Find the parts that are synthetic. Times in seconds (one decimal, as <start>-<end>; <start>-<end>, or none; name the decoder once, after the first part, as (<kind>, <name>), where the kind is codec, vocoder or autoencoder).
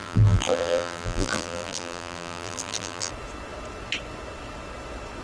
0.0-3.1 (vocoder, BigVGAN v2)